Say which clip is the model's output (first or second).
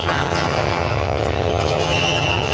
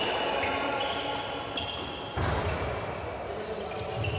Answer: first